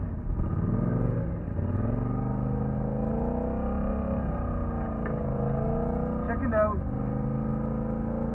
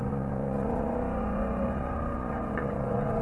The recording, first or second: first